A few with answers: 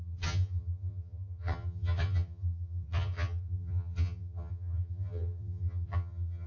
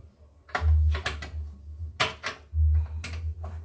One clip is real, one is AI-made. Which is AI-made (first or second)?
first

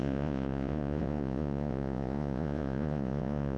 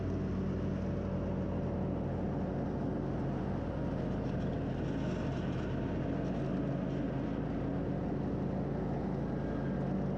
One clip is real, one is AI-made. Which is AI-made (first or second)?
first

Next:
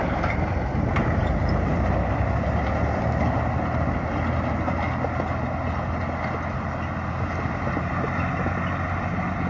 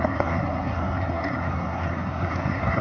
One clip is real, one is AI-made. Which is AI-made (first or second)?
second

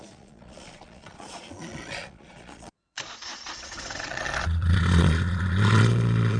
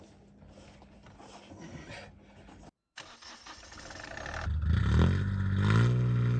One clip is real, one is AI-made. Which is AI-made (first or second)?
first